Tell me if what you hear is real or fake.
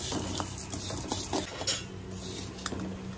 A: real